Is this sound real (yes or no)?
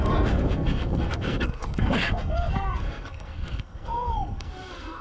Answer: no